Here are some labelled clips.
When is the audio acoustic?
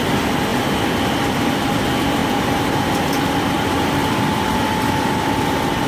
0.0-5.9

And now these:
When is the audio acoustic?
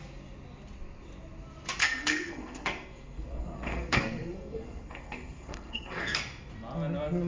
0.0-1.8; 6.2-7.3